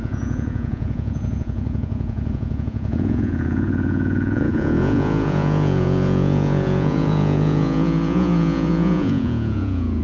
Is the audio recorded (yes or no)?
no